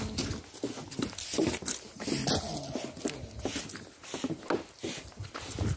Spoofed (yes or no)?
no